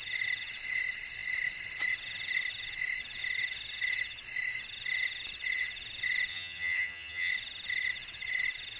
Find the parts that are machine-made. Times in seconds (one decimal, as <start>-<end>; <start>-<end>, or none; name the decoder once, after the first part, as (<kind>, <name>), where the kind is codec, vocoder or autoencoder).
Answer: 6.3-7.3 (vocoder, HiFi-GAN)